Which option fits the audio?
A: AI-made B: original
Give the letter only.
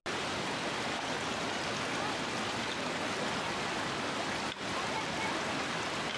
B